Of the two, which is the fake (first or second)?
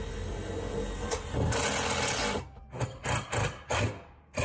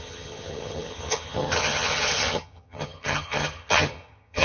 second